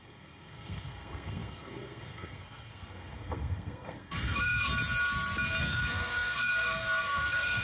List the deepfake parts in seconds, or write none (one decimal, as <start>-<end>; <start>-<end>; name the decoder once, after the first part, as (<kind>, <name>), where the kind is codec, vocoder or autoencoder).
0.0-4.7 (codec, SNAC); 5.6-7.6